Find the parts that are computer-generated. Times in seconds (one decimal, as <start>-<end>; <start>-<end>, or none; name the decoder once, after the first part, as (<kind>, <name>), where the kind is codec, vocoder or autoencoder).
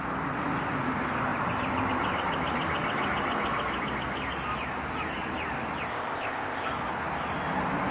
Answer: 5.9-6.7 (codec, ZipCodec)